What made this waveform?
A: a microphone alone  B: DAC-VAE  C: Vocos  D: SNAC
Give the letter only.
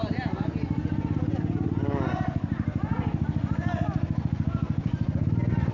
A